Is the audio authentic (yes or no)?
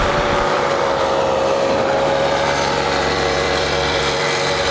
no